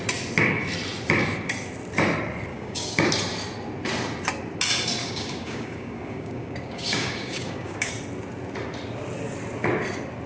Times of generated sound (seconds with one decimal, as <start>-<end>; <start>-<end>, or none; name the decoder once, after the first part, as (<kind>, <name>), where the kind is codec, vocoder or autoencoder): 2.5-3.1 (codec, DAC); 5.0-7.9